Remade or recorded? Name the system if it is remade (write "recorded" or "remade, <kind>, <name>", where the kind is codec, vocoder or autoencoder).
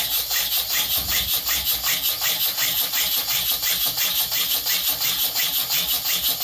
recorded